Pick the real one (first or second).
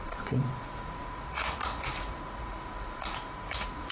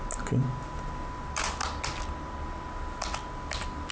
second